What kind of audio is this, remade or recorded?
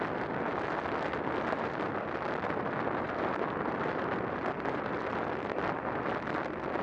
recorded